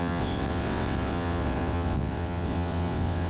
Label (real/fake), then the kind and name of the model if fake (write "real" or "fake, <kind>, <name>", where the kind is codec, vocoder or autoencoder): fake, vocoder, WaveNeXt